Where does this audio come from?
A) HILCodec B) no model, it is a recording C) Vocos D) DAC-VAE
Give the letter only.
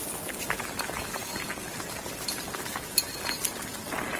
B